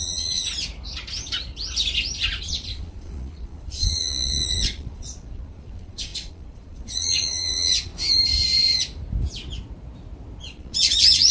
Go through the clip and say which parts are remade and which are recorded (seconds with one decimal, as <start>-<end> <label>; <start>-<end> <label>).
0.0-0.4 remade; 0.4-2.4 recorded; 2.4-7.9 remade; 7.9-10.4 recorded; 10.4-11.3 remade